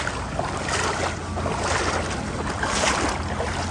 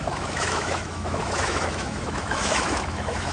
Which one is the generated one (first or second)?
second